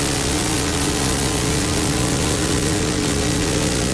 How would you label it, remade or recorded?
remade